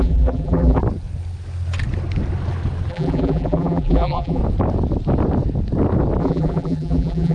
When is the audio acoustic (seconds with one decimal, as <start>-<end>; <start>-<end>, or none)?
0.8-2.9; 4.4-6.2